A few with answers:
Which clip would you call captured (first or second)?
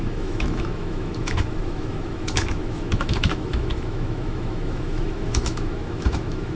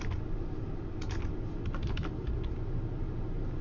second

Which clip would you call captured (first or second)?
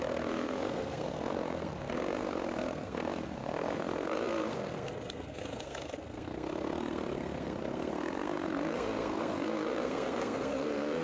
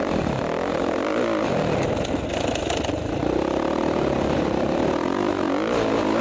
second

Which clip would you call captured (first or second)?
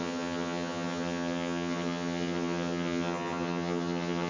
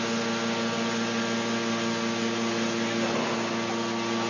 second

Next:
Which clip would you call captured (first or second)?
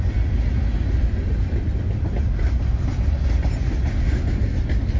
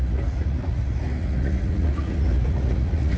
first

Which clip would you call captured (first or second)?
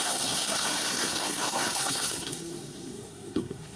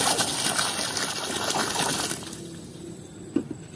second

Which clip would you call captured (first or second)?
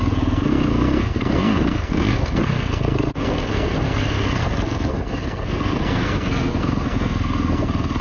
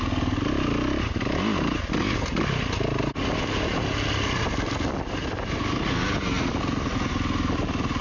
second